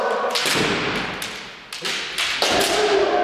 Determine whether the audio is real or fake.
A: real